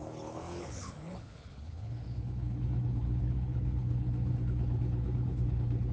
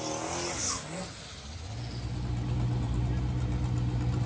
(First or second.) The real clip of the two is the second